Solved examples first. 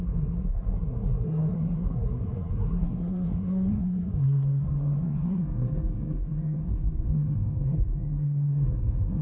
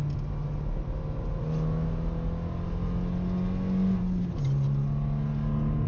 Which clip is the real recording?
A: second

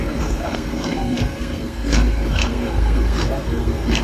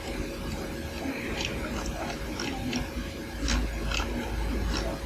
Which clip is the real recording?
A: second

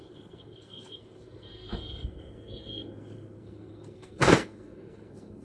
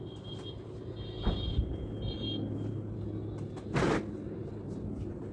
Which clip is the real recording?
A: second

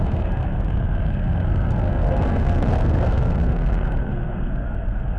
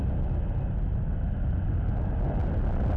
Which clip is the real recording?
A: second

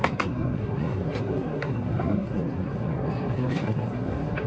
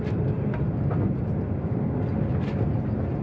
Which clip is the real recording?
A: second